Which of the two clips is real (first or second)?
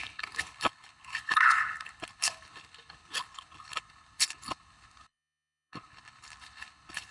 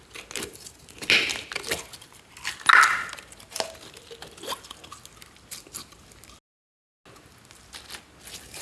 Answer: second